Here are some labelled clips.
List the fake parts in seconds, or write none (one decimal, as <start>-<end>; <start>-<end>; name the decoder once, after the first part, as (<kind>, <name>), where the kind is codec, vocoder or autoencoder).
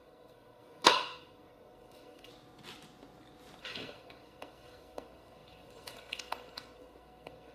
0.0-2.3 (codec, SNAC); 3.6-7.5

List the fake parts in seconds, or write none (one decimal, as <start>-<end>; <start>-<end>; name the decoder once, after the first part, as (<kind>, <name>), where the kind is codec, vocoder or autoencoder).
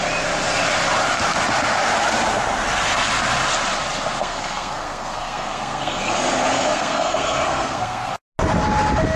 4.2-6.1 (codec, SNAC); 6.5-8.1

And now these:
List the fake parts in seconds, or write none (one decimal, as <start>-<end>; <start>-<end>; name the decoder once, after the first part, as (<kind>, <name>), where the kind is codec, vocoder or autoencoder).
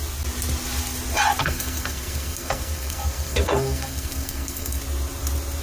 1.4-4.8 (codec, SNAC)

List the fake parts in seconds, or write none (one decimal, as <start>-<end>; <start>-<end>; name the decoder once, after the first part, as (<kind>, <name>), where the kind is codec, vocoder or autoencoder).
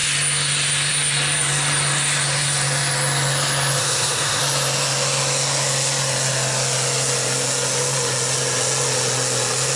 3.8-4.4 (codec, SNAC)